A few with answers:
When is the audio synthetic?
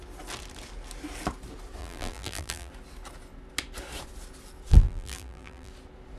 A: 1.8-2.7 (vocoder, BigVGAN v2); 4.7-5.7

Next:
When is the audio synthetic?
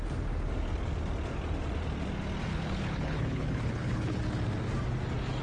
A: 2.5-4.2 (codec, HILCodec)